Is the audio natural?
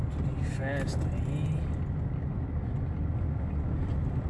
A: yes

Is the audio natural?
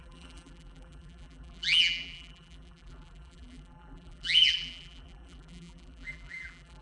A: no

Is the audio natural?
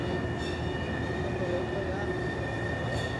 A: yes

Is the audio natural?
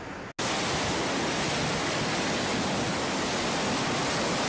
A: yes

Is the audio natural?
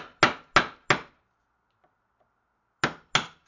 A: yes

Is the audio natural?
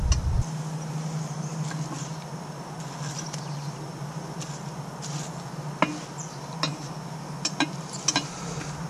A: yes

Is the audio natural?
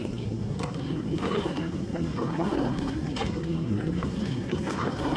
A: no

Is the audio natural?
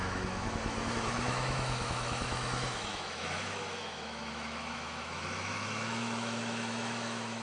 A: no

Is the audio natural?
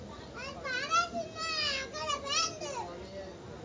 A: yes